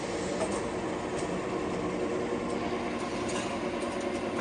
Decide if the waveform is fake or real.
real